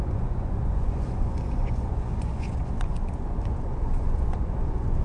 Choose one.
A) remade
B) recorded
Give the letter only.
A